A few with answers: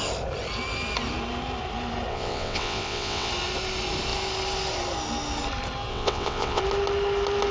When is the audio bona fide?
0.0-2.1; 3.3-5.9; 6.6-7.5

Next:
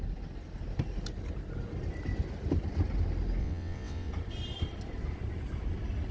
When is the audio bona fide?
0.0-3.4; 4.1-6.1